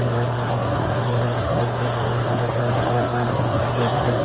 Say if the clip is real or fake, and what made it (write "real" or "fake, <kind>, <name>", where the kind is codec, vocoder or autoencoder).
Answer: fake, codec, SNAC